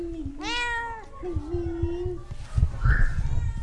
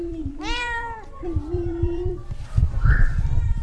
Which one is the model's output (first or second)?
second